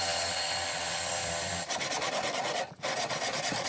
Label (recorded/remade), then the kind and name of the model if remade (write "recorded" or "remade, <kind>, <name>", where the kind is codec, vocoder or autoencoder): remade, vocoder, BigVGAN v2